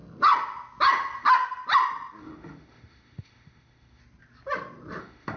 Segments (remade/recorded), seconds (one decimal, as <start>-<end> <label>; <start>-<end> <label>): 0.0-2.2 recorded; 2.2-4.0 remade; 4.0-5.0 recorded; 5.0-5.4 remade